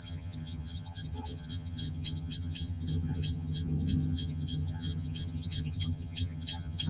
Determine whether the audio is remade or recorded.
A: remade